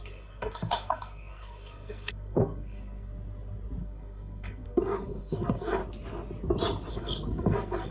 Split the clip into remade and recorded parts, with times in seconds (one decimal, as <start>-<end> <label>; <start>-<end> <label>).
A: 0.0-3.1 remade; 3.1-3.8 recorded; 3.8-5.8 remade; 5.8-6.9 recorded; 6.9-7.9 remade